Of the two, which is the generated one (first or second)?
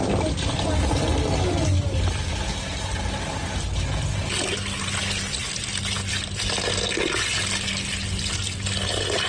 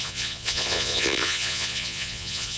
second